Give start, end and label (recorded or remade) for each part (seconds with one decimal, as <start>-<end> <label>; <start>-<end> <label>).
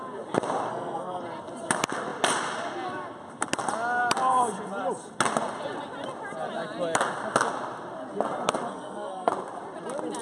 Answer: 0.0-0.7 recorded; 0.7-1.2 remade; 1.2-8.7 recorded; 8.7-9.3 remade; 9.3-10.2 recorded